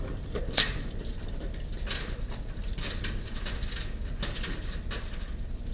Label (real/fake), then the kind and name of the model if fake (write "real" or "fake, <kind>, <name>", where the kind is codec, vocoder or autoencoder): real